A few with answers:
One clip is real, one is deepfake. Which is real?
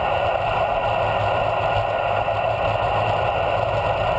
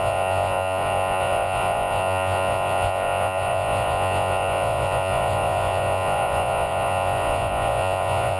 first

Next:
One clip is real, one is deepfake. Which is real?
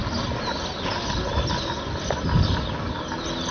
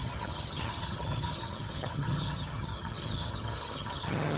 first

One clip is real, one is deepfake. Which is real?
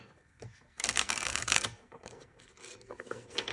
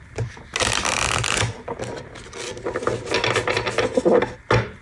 second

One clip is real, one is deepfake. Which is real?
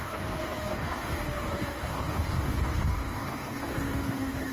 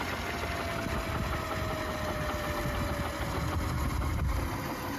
second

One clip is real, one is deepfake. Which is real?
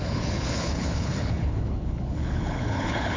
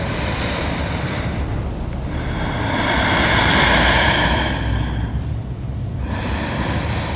second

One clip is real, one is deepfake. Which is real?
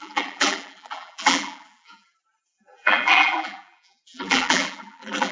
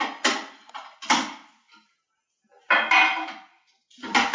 second